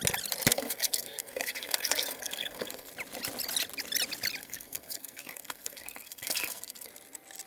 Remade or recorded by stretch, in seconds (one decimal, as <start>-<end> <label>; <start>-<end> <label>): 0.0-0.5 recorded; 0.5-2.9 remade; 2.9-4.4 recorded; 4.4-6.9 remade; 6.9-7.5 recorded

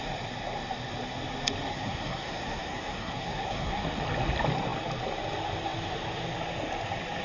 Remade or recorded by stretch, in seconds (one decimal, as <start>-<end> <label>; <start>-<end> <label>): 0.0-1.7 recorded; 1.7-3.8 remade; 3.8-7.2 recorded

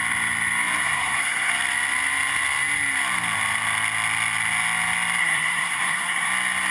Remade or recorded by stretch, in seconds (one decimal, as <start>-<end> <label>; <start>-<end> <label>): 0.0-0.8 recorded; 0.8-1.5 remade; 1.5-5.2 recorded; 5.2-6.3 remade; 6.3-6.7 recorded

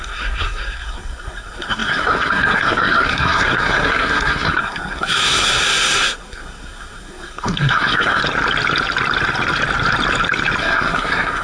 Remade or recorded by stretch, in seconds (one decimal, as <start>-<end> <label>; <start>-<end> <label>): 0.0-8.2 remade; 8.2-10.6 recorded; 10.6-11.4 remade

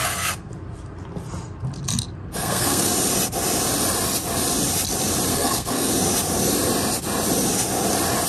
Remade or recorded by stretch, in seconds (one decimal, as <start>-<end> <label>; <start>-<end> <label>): 0.0-0.5 remade; 0.5-2.2 recorded; 2.2-2.9 remade; 2.9-5.3 recorded; 5.3-5.9 remade; 5.9-8.3 recorded